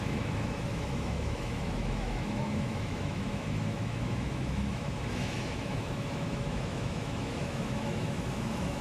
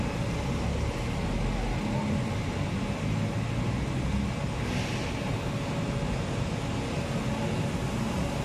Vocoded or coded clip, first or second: first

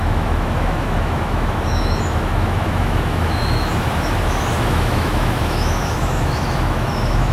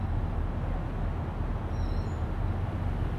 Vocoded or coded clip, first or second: first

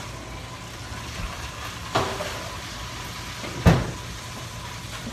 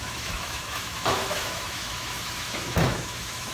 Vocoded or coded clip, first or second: second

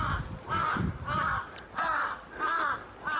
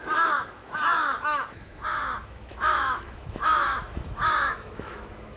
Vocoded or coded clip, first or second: second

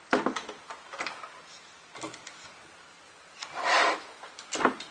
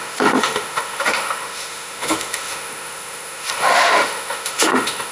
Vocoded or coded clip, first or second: second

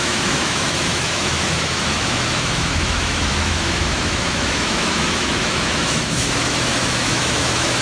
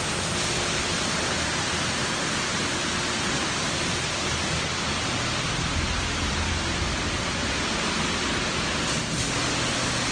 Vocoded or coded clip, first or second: first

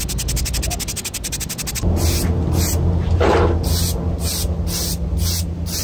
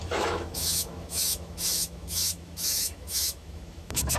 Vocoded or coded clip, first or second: second